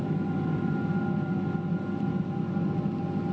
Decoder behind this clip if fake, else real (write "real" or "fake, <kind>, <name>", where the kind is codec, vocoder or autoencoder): real